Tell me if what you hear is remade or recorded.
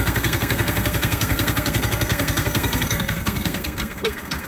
remade